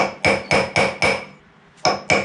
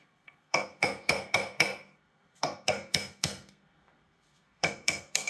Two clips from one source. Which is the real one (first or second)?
first